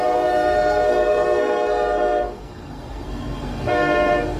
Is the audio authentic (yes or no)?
no